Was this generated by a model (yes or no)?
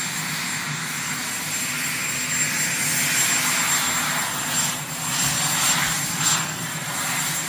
no